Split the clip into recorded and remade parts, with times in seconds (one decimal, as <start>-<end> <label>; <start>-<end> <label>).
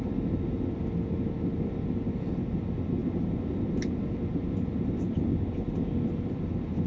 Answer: 0.0-6.9 recorded